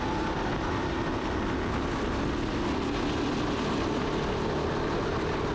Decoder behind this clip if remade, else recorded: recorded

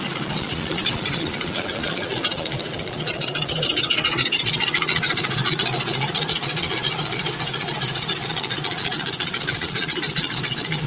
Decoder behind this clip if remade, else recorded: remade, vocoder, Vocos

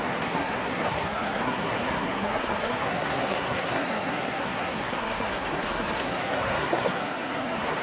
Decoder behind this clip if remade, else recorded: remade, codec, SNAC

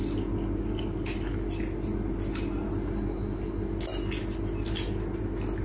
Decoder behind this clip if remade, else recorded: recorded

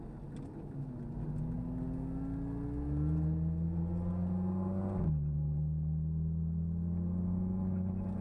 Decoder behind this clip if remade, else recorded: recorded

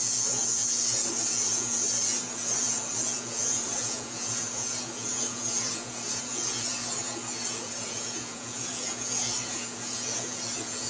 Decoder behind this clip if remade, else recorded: remade, vocoder, Vocos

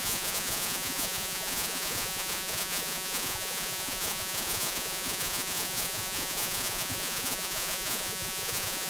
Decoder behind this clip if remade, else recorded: remade, vocoder, Vocos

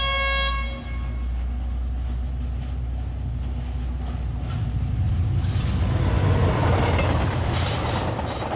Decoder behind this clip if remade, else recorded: recorded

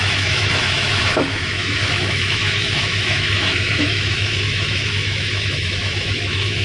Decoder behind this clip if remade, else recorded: remade, autoencoder, DAC-VAE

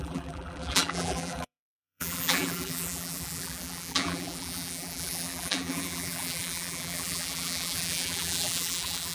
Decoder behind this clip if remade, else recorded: remade, vocoder, BigVGAN v2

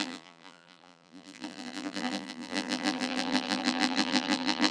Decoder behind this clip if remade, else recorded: remade, vocoder, BigVGAN v2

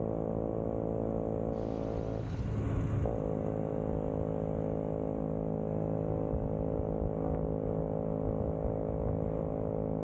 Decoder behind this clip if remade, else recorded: recorded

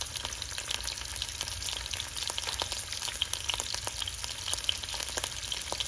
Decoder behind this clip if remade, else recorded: recorded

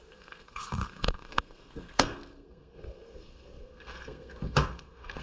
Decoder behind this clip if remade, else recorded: remade, codec, SNAC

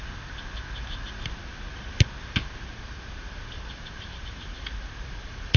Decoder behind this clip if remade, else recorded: recorded